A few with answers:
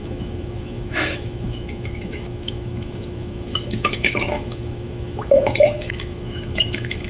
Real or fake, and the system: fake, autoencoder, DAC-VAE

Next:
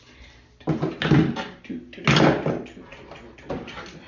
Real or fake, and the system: real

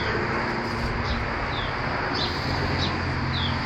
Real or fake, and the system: real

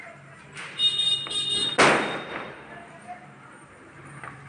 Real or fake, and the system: real